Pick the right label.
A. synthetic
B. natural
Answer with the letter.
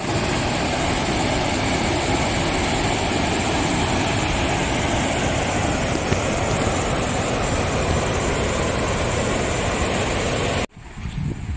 B